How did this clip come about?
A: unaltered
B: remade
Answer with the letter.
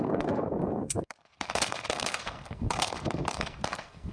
B